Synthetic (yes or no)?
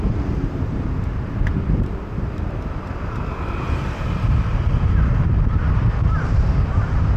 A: yes